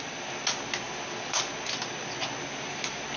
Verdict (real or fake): real